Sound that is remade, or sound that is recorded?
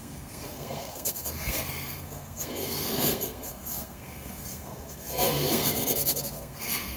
remade